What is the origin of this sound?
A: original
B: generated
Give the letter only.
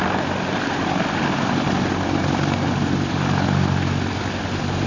A